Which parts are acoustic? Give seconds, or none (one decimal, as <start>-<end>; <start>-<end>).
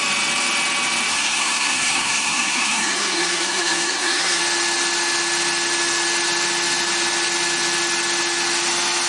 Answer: 0.0-1.1; 4.4-9.1